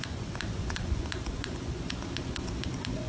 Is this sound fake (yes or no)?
yes